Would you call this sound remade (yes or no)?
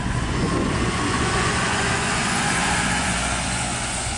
yes